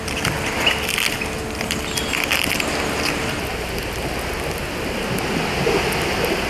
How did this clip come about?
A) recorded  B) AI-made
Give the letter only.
A